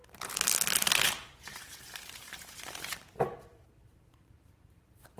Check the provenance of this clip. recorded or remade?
remade